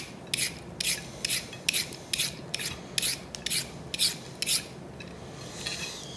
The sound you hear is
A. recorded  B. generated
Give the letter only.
A